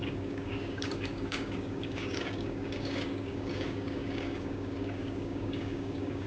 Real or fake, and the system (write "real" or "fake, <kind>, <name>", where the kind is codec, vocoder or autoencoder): fake, codec, DAC